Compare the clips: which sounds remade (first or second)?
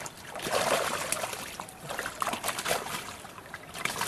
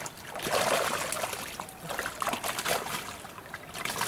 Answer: first